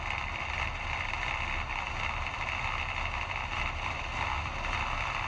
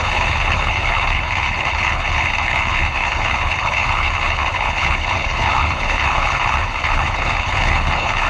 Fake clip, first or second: second